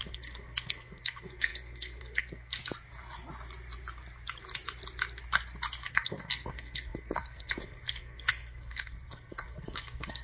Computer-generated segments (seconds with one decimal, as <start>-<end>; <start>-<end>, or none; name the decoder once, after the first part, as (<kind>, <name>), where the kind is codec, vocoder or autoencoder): 0.0-2.6 (codec, SNAC); 5.9-10.2